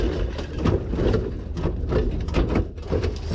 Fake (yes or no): no